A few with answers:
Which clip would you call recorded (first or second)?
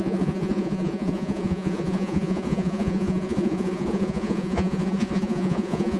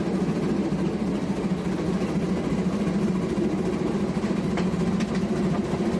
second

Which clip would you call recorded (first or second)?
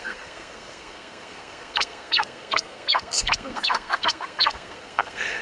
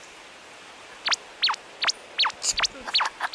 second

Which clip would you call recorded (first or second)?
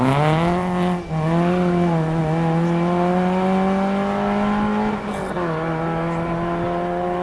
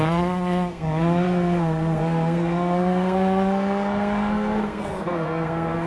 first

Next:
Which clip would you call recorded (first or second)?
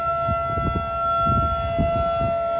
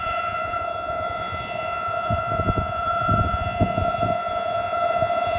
first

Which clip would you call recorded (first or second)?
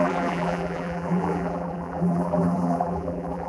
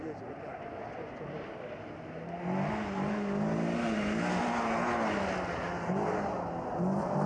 second